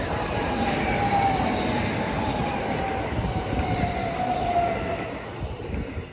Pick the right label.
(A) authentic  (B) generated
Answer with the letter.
A